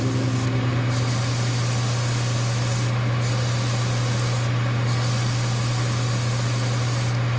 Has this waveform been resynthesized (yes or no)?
no